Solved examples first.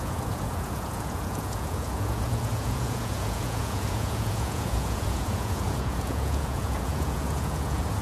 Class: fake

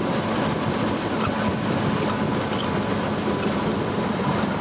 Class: real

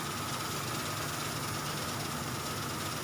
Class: real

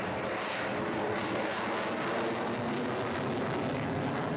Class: real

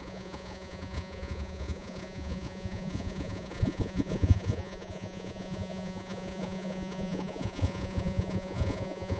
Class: fake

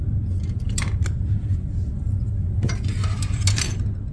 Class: real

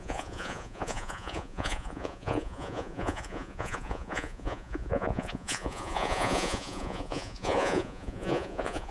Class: fake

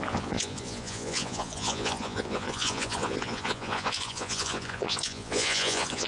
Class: fake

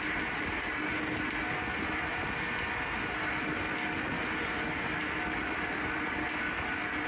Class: real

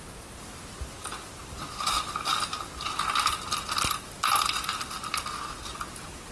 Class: real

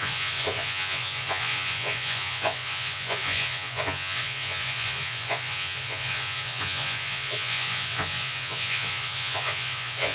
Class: fake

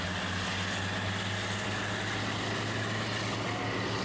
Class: real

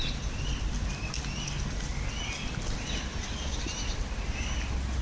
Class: real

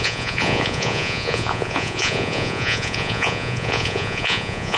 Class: fake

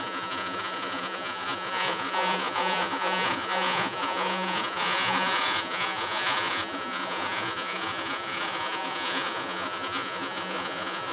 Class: fake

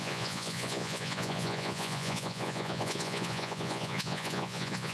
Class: fake